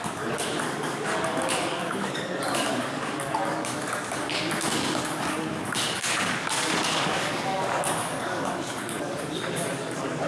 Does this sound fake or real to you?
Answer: fake